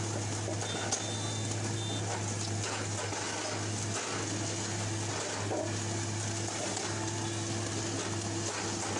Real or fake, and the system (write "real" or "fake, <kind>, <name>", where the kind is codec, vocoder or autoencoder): real